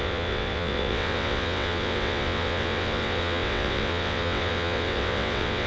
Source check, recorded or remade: remade